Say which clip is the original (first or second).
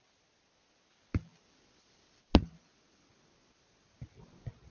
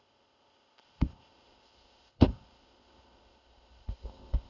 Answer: first